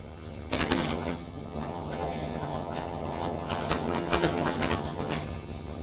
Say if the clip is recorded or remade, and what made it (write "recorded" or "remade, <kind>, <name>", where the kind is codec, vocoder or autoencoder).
remade, vocoder, HiFi-GAN